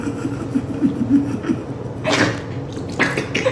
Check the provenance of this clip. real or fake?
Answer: real